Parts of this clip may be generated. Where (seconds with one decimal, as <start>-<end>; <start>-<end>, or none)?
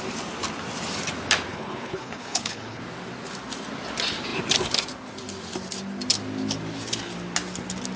1.5-2.8